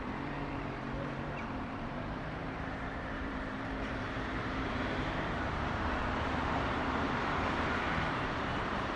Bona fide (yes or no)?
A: no